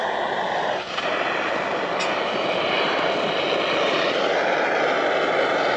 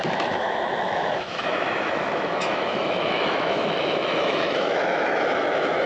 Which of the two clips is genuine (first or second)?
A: first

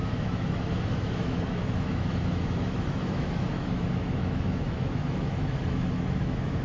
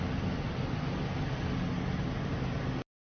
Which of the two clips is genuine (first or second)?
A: second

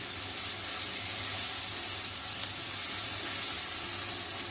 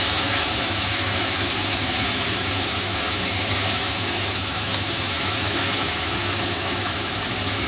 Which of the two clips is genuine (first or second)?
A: first